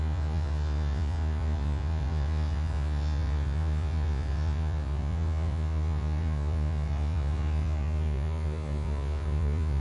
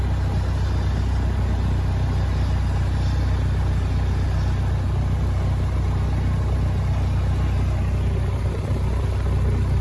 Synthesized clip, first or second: first